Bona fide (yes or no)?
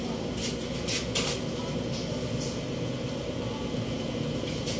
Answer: yes